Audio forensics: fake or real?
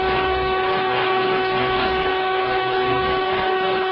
fake